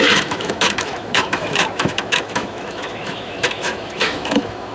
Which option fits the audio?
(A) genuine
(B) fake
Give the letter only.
B